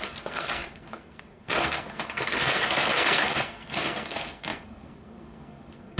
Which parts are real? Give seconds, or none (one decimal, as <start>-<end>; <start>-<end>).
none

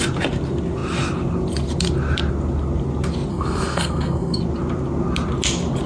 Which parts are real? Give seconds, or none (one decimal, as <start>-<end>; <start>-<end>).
0.0-3.3; 4.4-5.9

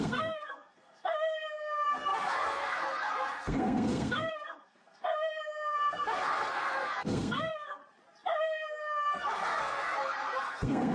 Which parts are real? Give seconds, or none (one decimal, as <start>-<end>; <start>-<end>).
7.8-8.4